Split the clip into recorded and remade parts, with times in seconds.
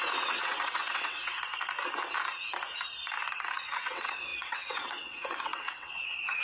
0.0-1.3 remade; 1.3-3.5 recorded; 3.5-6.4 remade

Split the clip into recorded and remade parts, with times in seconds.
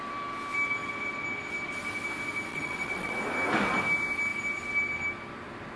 0.0-2.5 recorded; 2.5-3.1 remade; 3.1-5.8 recorded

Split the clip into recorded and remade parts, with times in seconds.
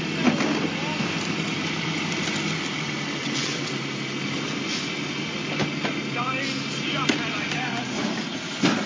0.0-3.2 recorded; 3.2-3.7 remade; 3.7-8.9 recorded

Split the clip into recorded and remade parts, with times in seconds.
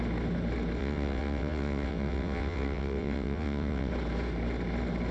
0.0-0.8 recorded; 0.8-3.9 remade; 3.9-5.1 recorded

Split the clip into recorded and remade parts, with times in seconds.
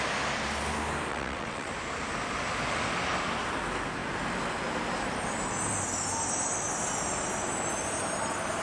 0.0-1.1 recorded; 1.1-1.7 remade; 1.7-8.6 recorded